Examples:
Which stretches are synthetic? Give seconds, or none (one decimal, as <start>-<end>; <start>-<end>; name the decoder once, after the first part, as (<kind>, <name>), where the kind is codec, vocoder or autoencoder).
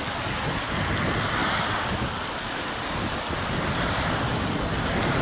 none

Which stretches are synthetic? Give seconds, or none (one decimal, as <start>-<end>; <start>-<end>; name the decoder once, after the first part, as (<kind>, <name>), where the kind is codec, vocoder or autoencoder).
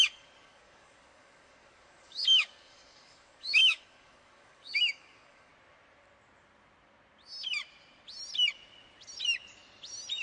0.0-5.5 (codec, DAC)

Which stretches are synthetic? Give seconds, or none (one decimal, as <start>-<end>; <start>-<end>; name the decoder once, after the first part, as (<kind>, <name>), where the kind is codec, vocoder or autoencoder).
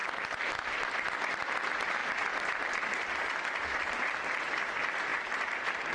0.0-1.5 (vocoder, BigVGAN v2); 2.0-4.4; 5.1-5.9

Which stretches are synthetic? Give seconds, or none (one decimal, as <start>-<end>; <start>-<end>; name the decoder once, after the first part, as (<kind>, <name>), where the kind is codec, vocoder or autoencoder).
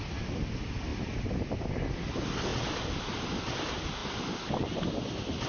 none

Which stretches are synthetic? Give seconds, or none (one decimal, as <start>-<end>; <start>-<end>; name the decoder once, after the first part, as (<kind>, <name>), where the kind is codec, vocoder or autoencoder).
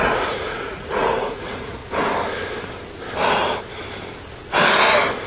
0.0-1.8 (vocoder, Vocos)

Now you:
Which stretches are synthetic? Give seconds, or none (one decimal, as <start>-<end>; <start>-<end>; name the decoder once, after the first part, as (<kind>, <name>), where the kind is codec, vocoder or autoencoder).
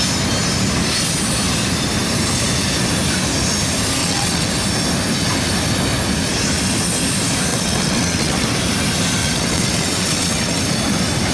4.0-4.5 (vocoder, WaveNeXt); 7.5-8.5; 9.2-10.6